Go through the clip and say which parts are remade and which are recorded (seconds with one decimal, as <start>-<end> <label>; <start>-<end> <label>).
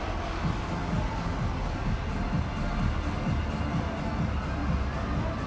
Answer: 0.0-5.5 recorded